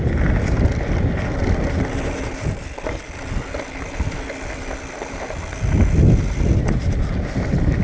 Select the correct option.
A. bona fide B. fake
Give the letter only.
A